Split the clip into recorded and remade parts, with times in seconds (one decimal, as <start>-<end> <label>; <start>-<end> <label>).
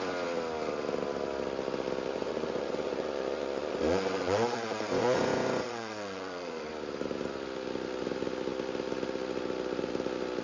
0.0-2.1 recorded; 2.1-6.7 remade; 6.7-10.4 recorded